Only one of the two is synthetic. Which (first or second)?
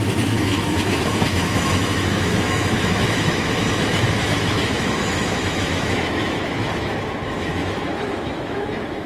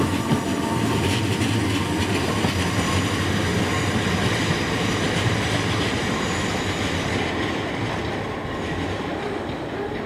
first